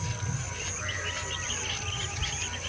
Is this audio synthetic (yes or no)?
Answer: no